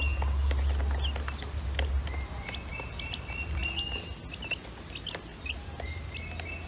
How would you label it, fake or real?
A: real